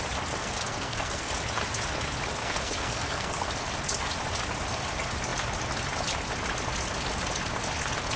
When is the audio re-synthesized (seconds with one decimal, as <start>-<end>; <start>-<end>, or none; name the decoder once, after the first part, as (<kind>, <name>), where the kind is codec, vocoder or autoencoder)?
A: 0.4-1.3 (codec, SNAC); 2.4-3.5